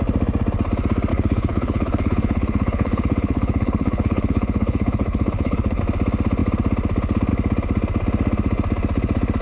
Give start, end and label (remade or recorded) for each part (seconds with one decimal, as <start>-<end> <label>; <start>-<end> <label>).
0.0-1.1 recorded; 1.1-5.8 remade; 5.8-9.4 recorded